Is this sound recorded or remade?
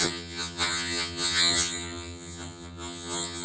remade